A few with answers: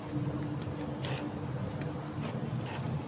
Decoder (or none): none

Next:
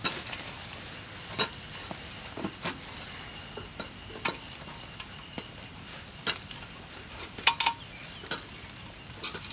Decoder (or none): none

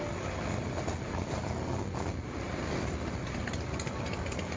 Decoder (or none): none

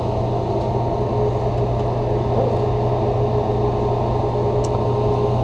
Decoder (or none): none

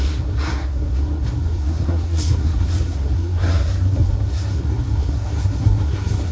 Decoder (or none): codec, SNAC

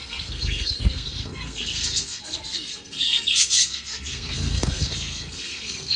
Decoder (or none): codec, SNAC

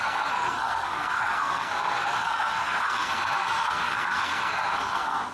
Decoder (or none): codec, SNAC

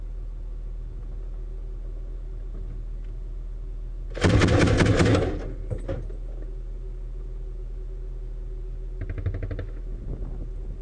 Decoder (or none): none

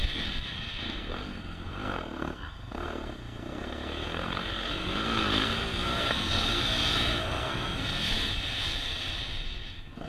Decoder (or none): codec, SNAC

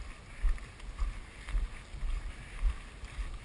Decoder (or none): none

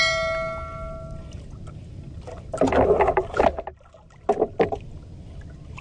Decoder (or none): none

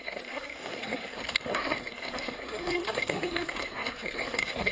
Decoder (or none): codec, SNAC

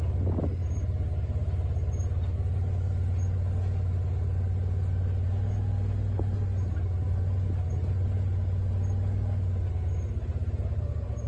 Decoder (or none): none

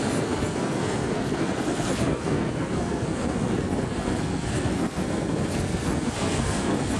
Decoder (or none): codec, SNAC